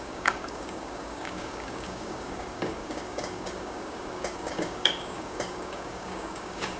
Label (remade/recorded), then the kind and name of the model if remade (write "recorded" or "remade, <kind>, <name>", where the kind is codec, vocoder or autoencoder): remade, codec, DAC